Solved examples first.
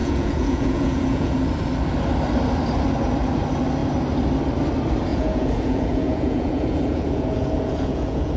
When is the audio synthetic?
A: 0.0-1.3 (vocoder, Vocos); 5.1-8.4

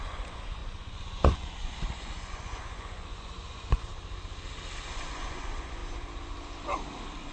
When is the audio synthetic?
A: 0.0-3.9 (vocoder, Vocos); 4.9-5.8